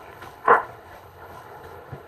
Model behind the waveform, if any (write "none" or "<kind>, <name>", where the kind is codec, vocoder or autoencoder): codec, HILCodec